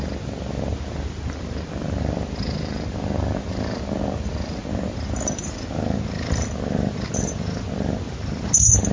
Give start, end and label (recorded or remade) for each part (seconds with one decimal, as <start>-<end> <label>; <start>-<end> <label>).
0.0-8.9 recorded

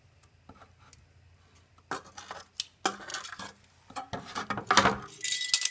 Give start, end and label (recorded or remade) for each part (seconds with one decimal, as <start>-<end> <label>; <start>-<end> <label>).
0.0-5.7 recorded

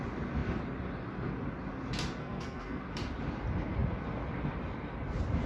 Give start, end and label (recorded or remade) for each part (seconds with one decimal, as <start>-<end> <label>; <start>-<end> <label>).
0.0-2.2 recorded; 2.2-2.8 remade; 2.8-5.5 recorded

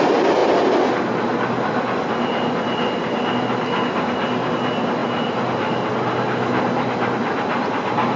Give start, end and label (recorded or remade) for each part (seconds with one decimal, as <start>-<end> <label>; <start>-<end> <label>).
0.0-8.2 recorded

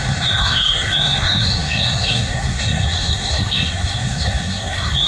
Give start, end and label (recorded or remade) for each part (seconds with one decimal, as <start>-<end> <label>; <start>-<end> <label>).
0.0-5.1 remade

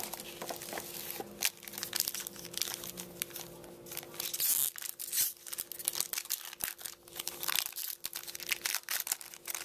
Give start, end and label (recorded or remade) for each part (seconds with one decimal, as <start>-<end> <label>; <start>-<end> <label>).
0.0-9.6 recorded

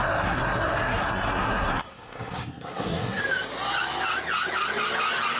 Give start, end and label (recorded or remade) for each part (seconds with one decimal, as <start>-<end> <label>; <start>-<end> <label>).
0.0-3.2 remade; 3.2-5.4 recorded

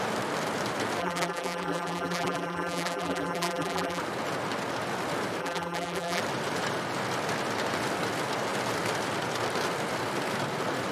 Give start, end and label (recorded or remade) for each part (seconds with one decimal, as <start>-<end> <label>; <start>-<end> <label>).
0.0-1.0 recorded; 1.0-4.0 remade; 4.0-5.4 recorded; 5.4-6.2 remade; 6.2-10.9 recorded